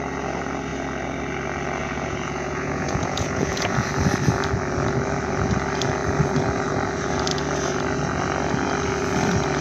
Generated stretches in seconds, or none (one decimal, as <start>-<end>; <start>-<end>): 1.8-3.9